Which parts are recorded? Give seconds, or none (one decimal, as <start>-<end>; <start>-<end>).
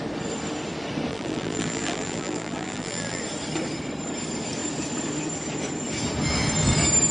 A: 0.0-1.1; 3.2-7.1